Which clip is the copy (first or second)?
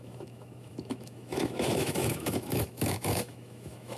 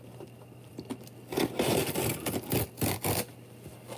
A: first